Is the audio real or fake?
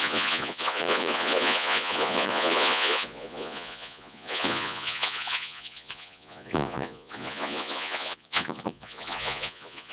fake